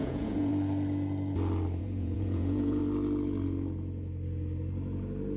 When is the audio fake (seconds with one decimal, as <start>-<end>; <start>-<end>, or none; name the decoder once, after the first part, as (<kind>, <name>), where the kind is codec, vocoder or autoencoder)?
0.0-0.5 (vocoder, Vocos); 1.8-2.8